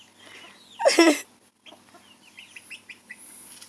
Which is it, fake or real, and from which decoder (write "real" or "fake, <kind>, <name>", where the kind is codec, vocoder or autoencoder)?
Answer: real